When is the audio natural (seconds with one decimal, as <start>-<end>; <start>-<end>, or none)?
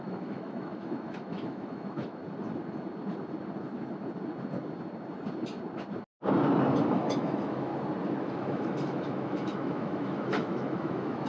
2.2-6.9; 7.7-8.2